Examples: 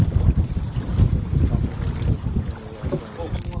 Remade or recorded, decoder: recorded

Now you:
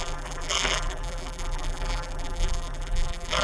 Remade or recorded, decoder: remade, vocoder, BigVGAN v2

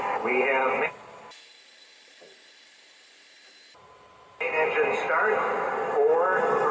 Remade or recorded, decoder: remade, vocoder, BigVGAN v2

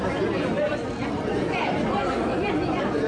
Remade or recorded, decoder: remade, vocoder, BigVGAN v2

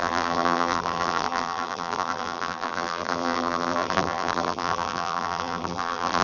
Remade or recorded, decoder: remade, vocoder, BigVGAN v2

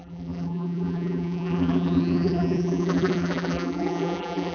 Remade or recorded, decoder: remade, vocoder, BigVGAN v2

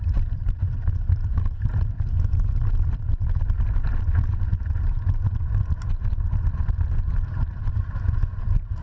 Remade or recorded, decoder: remade, vocoder, BigVGAN v2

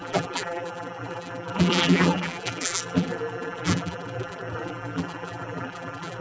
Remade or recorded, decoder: remade, vocoder, BigVGAN v2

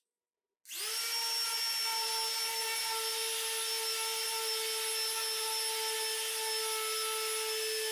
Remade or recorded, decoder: recorded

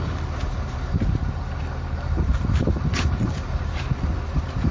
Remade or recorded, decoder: remade, vocoder, BigVGAN v2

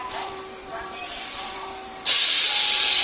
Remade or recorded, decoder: remade, vocoder, BigVGAN v2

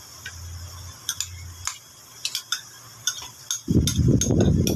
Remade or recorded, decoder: recorded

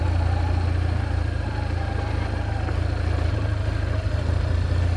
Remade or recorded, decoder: recorded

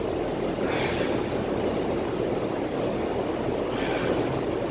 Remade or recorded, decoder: recorded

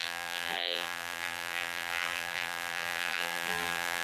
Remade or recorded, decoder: remade, vocoder, BigVGAN v2